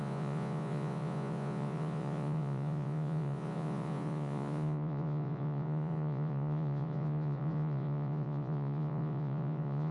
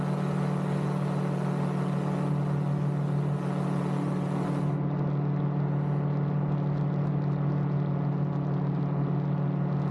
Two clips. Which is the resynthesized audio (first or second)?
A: first